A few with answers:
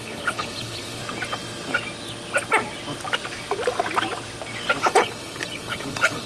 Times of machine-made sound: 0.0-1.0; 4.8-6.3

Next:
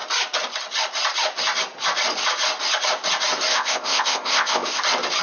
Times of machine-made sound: 3.5-4.8